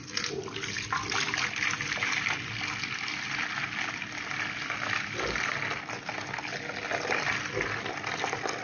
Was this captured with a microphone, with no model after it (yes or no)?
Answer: yes